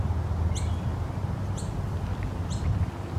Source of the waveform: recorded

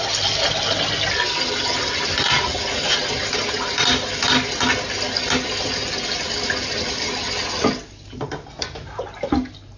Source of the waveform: recorded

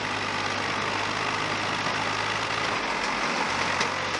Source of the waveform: recorded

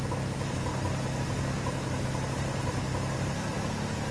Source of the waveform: recorded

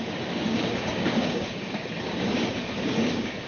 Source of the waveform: remade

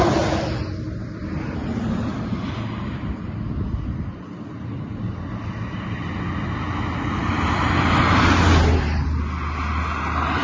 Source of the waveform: recorded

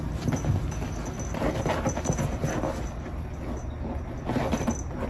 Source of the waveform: recorded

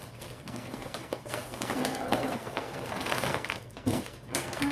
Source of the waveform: remade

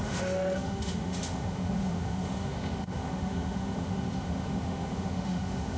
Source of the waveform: remade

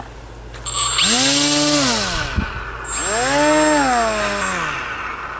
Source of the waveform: recorded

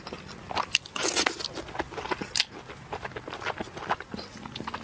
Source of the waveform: recorded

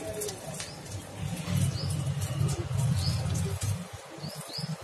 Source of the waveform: recorded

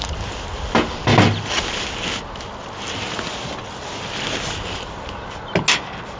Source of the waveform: recorded